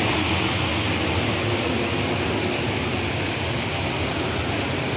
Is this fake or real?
real